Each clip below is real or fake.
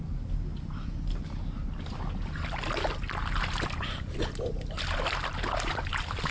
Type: real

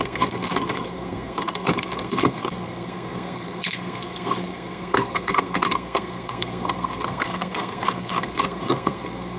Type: fake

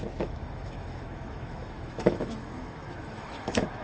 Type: fake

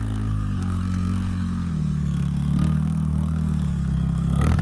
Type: fake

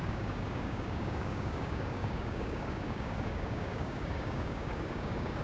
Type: fake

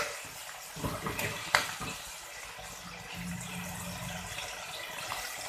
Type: real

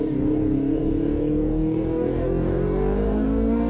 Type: fake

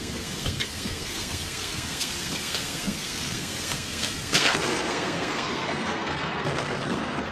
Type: fake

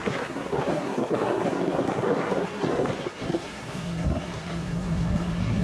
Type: fake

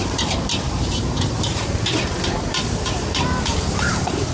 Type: fake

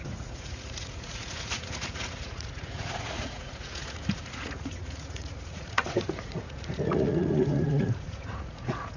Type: fake